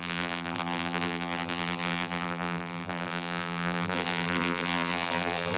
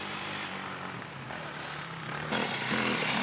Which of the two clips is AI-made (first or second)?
first